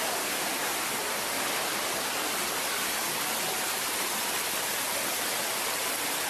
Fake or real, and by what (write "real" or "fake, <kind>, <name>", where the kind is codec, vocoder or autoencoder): real